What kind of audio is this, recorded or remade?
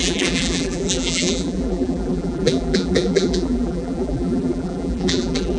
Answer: remade